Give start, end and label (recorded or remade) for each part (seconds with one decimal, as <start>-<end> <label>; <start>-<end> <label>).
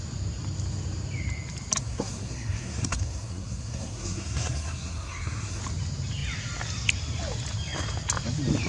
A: 0.0-1.8 recorded; 1.8-5.6 remade; 5.6-8.7 recorded